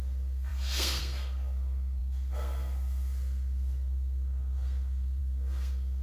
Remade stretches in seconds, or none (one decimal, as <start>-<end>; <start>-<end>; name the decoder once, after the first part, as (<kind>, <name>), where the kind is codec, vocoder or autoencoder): 0.0-6.0 (codec, SNAC)